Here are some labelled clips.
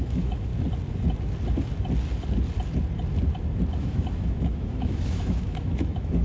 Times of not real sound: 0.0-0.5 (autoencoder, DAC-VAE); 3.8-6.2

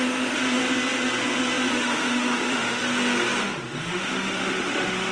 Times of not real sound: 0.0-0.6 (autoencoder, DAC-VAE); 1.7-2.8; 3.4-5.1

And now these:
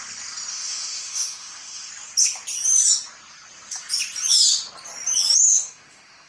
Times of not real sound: 0.5-1.9 (autoencoder, DAC-VAE); 5.5-6.3

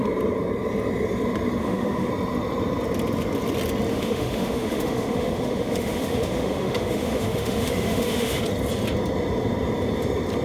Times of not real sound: 1.6-2.1 (autoencoder, DAC-VAE); 3.9-8.4

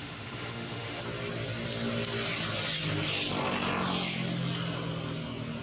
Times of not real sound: 0.0-1.0 (autoencoder, DAC-VAE)

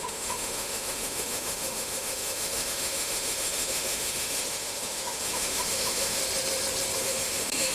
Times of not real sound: 0.0-6.2 (autoencoder, DAC-VAE); 7.0-7.7

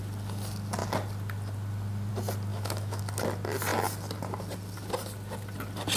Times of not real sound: 2.5-3.0 (autoencoder, DAC-VAE)